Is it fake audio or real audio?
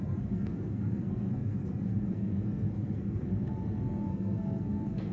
fake